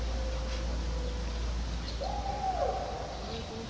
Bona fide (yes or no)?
yes